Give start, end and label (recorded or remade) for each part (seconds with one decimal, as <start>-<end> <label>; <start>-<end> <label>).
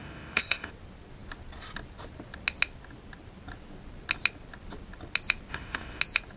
0.0-0.7 remade; 0.7-5.5 recorded; 5.5-6.0 remade; 6.0-6.4 recorded